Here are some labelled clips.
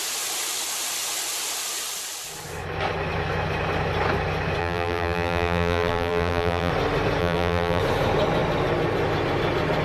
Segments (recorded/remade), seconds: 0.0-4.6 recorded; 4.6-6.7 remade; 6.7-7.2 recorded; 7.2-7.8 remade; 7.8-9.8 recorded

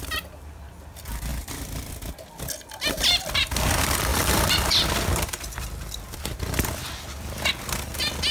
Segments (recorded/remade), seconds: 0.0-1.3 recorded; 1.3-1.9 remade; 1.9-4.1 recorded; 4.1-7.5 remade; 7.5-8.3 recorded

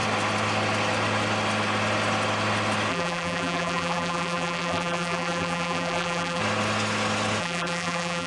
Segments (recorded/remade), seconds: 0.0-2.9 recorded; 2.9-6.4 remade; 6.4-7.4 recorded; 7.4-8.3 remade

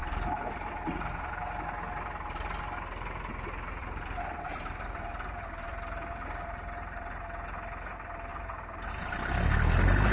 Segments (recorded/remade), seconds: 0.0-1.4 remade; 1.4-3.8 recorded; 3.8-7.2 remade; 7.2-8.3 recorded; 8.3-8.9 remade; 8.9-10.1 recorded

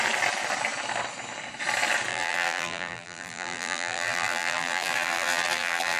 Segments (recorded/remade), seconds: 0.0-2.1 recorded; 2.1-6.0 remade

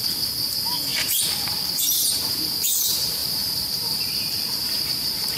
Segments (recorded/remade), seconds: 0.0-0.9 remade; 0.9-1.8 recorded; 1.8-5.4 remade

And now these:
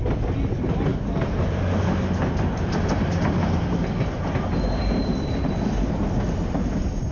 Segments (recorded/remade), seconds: 0.0-0.9 recorded; 0.9-5.2 remade; 5.2-7.1 recorded

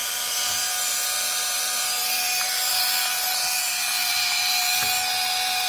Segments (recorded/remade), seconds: 0.0-2.7 remade; 2.7-4.0 recorded; 4.0-4.6 remade; 4.6-5.7 recorded